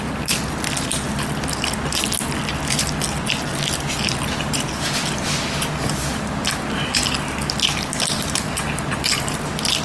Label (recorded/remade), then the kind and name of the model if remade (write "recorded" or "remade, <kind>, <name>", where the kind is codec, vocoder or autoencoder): recorded